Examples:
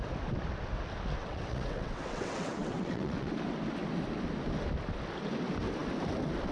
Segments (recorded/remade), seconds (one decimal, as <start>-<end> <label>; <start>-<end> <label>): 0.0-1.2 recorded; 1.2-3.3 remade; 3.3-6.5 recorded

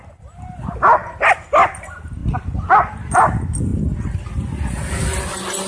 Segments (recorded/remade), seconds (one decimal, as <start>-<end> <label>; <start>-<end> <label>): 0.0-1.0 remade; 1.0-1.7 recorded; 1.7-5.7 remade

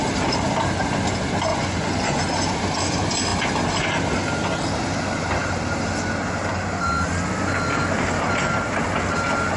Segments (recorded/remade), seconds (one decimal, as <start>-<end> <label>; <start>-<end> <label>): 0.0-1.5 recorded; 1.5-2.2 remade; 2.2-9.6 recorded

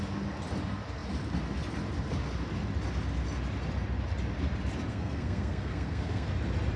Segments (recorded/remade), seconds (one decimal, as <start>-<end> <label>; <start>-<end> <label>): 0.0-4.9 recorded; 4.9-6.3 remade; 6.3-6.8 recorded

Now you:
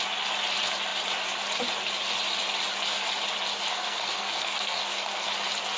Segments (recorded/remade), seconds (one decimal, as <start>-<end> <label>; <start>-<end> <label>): 0.0-3.7 recorded; 3.7-5.3 remade; 5.3-5.8 recorded

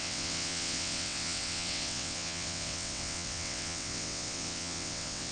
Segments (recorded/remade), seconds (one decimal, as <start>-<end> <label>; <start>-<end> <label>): 0.0-5.3 remade

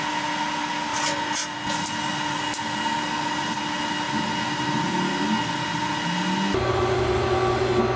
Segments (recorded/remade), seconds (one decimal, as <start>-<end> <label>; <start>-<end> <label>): 0.0-8.0 recorded